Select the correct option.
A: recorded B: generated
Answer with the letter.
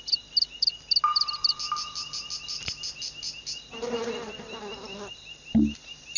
A